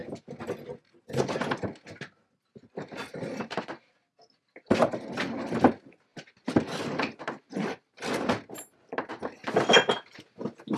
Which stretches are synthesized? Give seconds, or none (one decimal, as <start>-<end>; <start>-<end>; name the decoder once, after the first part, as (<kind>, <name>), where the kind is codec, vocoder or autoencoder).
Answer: none